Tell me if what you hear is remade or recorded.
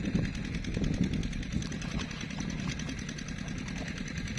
recorded